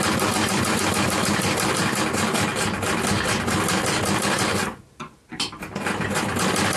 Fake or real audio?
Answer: real